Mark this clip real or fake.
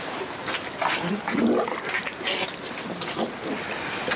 real